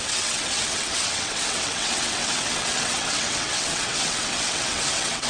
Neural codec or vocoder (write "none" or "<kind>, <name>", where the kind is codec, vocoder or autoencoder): vocoder, WaveNeXt